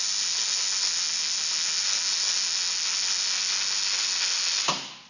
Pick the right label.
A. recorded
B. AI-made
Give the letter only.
A